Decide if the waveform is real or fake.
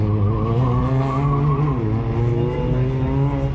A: real